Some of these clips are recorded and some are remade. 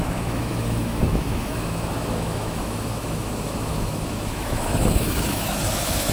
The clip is remade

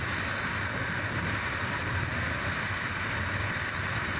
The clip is recorded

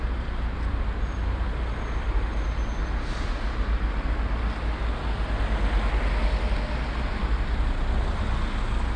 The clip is recorded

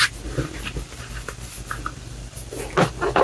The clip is recorded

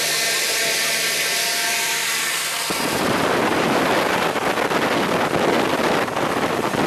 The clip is recorded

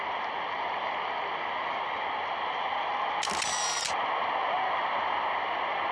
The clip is recorded